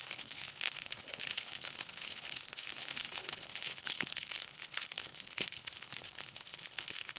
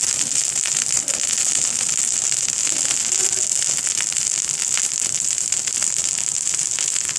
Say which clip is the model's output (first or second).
first